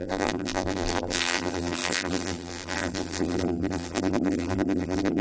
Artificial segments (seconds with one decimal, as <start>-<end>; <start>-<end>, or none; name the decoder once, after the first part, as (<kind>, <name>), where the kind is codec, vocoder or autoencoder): 0.0-5.2 (vocoder, BigVGAN v2)